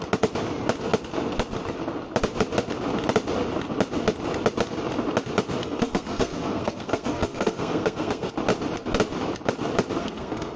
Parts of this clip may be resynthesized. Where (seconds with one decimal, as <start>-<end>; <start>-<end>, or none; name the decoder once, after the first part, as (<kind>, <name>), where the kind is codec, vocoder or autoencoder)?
5.6-8.3 (codec, SNAC); 10.0-10.6